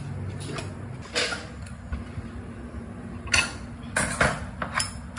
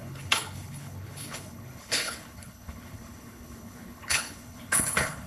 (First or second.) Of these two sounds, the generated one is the second